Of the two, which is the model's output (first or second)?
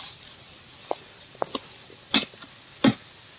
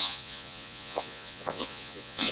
second